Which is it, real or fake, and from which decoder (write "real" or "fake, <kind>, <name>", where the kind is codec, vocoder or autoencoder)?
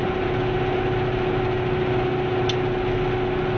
real